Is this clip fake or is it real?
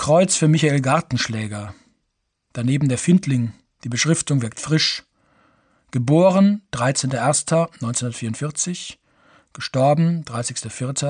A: real